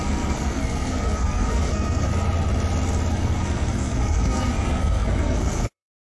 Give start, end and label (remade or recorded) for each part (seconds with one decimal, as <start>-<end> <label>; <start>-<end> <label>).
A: 0.0-2.1 remade; 2.1-3.1 recorded; 3.1-6.1 remade